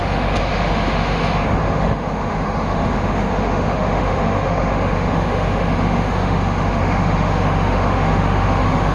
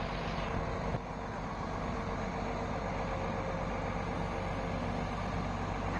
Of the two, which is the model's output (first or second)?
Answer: first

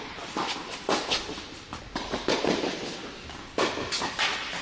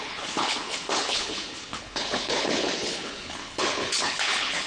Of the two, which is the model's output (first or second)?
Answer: second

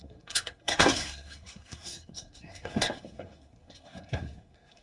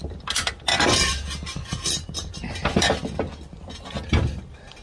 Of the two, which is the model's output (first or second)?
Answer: first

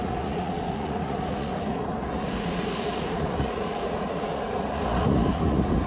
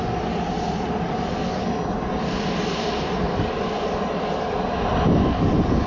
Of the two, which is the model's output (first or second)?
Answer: first